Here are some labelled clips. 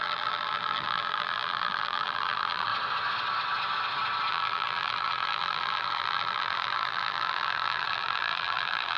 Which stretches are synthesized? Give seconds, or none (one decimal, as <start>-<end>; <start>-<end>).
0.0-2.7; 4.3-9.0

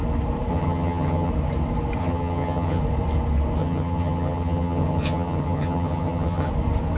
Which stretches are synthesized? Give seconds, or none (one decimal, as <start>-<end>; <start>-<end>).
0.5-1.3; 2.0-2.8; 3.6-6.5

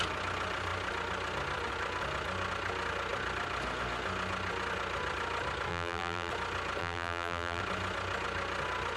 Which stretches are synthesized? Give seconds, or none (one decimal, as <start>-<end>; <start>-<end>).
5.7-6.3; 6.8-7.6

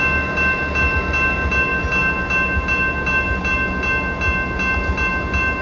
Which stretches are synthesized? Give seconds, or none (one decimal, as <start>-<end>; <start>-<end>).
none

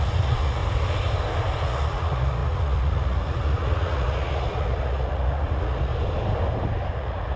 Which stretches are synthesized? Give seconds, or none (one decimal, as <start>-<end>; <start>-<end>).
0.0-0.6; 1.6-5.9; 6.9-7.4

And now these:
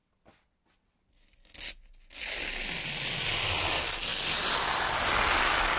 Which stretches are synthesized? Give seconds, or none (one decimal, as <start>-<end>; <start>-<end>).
none

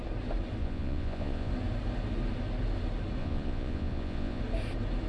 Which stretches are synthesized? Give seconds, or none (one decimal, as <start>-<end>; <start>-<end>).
0.6-1.5; 3.2-4.4

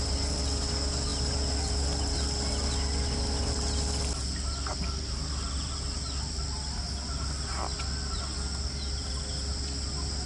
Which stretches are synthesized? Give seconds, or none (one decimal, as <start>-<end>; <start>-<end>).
none